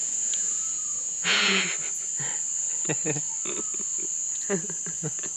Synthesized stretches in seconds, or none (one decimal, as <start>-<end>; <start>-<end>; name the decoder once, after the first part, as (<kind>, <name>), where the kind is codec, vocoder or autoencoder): 0.0-1.6 (vocoder, Vocos)